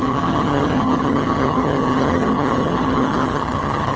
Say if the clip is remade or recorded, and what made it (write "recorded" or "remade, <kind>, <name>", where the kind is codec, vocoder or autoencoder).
remade, vocoder, HiFi-GAN